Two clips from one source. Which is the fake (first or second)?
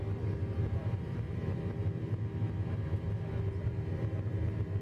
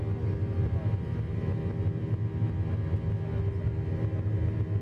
first